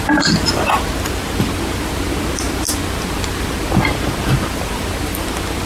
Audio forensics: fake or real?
real